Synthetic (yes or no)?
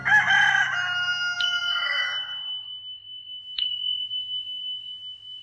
no